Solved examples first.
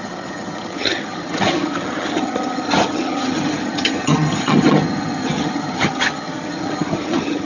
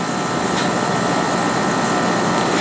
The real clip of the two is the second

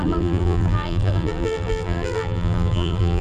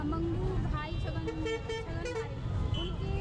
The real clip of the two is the second